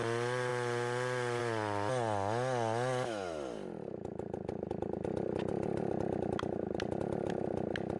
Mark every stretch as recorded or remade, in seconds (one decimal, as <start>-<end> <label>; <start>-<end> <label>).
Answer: 0.0-8.0 recorded